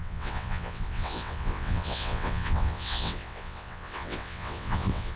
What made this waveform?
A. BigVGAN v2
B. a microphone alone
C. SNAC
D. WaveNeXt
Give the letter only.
D